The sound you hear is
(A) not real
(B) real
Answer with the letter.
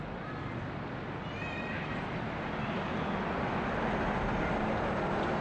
B